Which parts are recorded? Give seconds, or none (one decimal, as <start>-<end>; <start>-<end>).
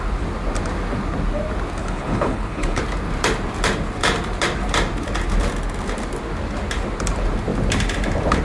0.0-1.8; 2.8-8.4